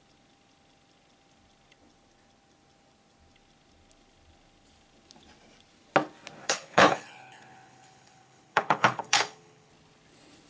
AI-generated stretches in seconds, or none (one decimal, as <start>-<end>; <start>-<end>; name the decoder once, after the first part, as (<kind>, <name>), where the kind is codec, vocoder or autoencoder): 6.4-9.7 (codec, HILCodec)